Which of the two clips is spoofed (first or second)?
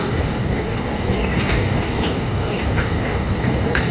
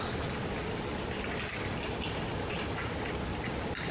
first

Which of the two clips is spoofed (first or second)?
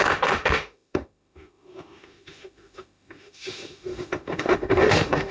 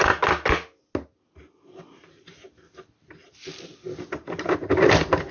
first